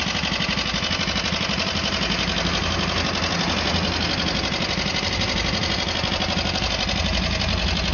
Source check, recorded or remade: recorded